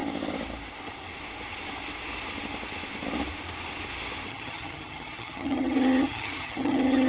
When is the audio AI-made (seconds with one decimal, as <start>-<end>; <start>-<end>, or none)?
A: 4.3-7.1